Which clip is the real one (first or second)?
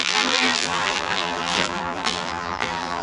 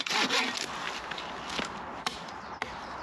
second